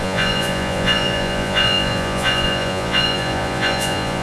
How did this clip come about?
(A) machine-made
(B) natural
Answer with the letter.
A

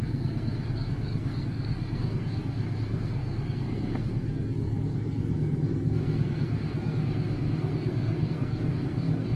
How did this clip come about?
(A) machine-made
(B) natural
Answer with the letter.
A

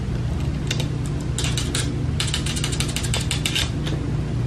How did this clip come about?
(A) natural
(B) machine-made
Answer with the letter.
A